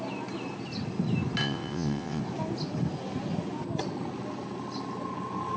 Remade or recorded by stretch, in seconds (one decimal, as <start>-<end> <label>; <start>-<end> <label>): 0.0-1.4 recorded; 1.4-2.2 remade; 2.2-5.6 recorded